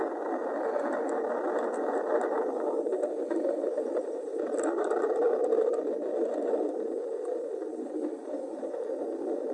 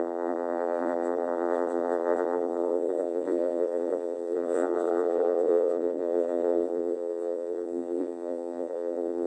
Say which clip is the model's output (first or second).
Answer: second